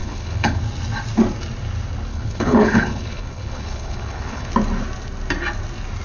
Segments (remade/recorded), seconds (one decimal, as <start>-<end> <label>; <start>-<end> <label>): 0.0-0.6 remade; 0.6-2.1 recorded; 2.1-4.5 remade; 4.5-6.0 recorded